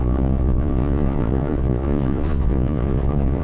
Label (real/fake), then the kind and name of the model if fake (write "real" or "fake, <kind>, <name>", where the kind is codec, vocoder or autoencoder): fake, vocoder, Vocos